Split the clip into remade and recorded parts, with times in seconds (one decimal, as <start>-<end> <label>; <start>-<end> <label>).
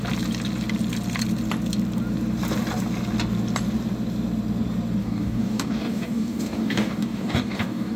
0.0-5.0 recorded; 5.0-8.0 remade